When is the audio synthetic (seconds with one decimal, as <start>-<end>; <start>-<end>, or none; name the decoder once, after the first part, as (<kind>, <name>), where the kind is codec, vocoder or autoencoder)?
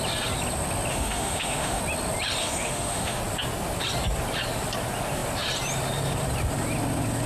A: 0.9-1.8 (autoencoder, DAC-VAE); 2.4-3.2